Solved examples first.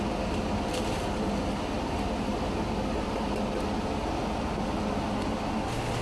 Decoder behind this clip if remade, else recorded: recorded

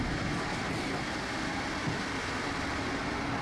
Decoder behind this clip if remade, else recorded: recorded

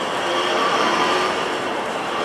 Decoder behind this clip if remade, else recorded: remade, vocoder, BigVGAN v2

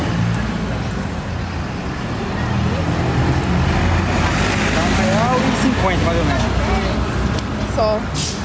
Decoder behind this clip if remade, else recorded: recorded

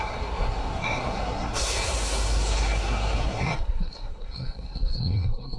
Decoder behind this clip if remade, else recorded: remade, codec, SNAC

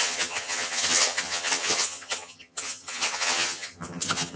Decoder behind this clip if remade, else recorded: remade, vocoder, HiFi-GAN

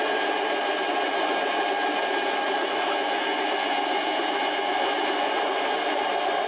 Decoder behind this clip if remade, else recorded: recorded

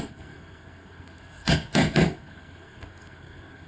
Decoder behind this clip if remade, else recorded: remade, codec, SNAC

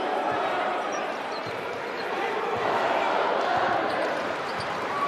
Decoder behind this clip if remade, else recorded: remade, vocoder, BigVGAN v2